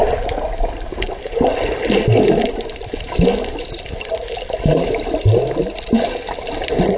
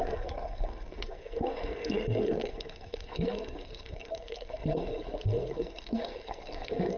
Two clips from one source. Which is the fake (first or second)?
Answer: second